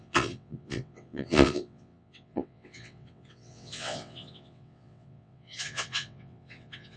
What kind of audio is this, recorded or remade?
remade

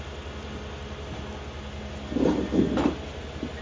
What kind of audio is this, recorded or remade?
recorded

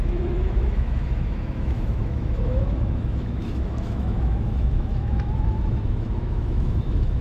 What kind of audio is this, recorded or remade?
remade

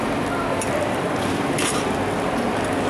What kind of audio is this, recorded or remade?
recorded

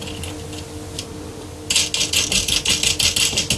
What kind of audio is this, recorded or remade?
recorded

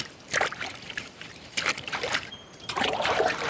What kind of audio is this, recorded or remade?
remade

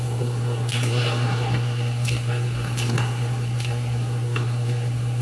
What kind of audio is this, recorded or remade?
remade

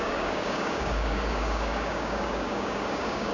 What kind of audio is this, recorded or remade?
remade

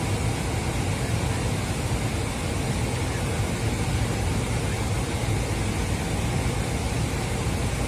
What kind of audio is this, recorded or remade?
recorded